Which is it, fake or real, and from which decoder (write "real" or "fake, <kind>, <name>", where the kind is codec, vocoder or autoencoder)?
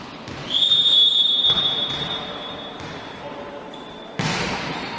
real